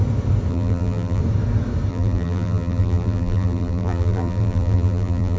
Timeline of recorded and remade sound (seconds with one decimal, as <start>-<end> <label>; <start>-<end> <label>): 0.0-0.5 recorded; 0.5-1.2 remade; 1.2-1.9 recorded; 1.9-5.4 remade

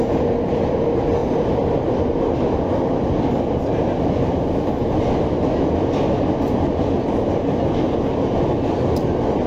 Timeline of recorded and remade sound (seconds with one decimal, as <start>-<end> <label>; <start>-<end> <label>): 0.0-9.5 recorded

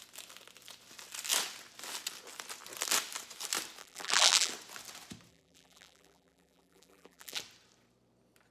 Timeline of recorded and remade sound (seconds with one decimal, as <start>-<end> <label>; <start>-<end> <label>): 0.0-3.8 recorded; 3.8-4.5 remade; 4.5-5.3 recorded; 5.3-7.4 remade; 7.4-8.5 recorded

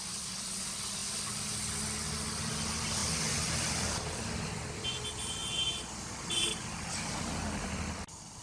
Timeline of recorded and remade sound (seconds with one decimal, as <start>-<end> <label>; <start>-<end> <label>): 0.0-1.0 recorded; 1.0-1.8 remade; 1.8-3.0 recorded; 3.0-4.5 remade; 4.5-5.4 recorded; 5.4-7.2 remade; 7.2-8.4 recorded

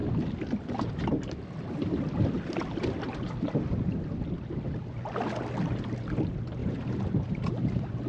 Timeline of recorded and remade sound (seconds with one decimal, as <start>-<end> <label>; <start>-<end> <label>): 0.0-6.6 recorded; 6.6-8.1 remade

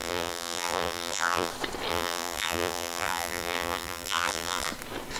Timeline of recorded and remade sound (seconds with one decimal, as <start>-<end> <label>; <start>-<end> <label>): 0.0-1.5 remade; 1.5-1.9 recorded; 1.9-4.7 remade; 4.7-5.2 recorded

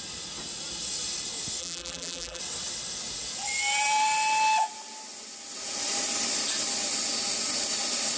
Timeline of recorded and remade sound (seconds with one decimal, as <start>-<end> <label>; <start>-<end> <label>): 0.0-1.6 recorded; 1.6-2.4 remade; 2.4-8.2 recorded